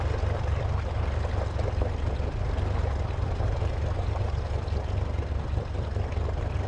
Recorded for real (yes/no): yes